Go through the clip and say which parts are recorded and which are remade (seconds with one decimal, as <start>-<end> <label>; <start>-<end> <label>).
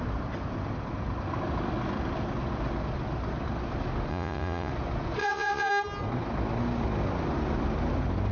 0.0-4.1 recorded; 4.1-4.7 remade; 4.7-5.2 recorded; 5.2-5.7 remade; 5.7-8.3 recorded